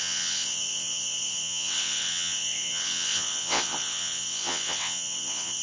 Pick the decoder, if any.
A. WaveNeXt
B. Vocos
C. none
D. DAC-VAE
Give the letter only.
A